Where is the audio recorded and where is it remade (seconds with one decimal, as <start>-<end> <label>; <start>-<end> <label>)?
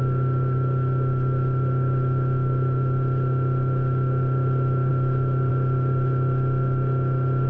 0.0-7.5 recorded